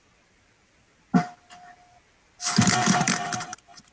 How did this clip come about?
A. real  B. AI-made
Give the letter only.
B